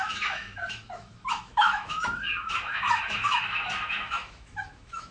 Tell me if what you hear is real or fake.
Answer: fake